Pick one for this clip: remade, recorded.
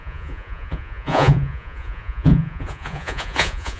remade